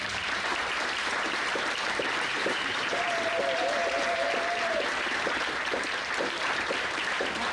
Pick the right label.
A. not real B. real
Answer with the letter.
A